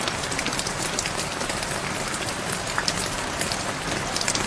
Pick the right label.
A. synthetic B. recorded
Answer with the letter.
B